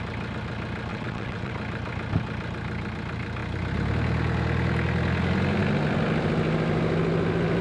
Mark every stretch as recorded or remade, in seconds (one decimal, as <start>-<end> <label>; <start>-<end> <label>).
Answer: 0.0-0.9 recorded; 0.9-1.5 remade; 1.5-7.6 recorded